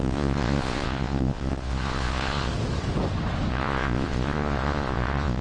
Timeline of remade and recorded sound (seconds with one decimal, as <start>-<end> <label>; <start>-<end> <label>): 0.0-2.5 remade; 2.5-3.5 recorded; 3.5-5.4 remade